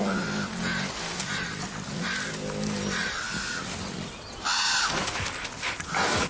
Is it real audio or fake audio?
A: real